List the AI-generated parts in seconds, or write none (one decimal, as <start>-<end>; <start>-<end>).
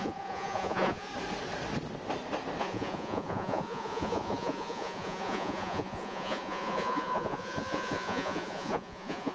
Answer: 0.0-1.1; 2.6-9.3